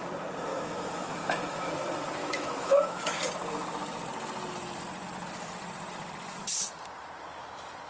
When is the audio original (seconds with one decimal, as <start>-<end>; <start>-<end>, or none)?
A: 0.0-0.5; 1.7-2.2; 3.2-7.9